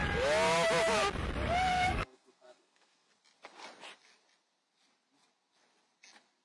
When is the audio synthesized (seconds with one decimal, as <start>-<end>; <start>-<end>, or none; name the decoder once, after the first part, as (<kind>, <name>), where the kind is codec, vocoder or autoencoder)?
1.7-3.1 (codec, SNAC)